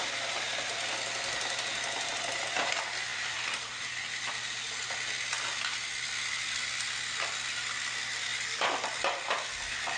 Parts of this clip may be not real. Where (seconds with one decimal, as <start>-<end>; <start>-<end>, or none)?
3.1-3.9; 8.3-9.2